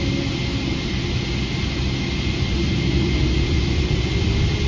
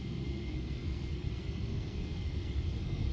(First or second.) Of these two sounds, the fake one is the second